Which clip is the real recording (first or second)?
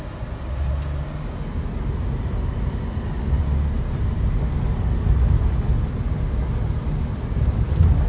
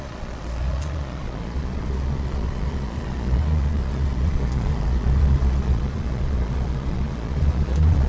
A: first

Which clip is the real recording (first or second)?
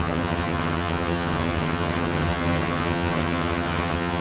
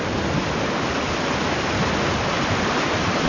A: second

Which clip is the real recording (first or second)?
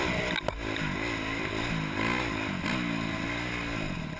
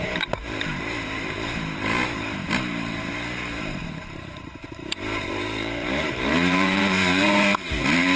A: first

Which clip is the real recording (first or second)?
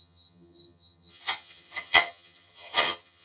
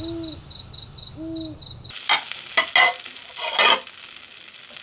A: second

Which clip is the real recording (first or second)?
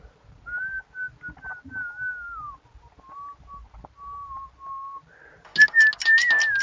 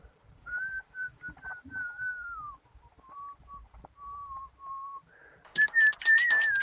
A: first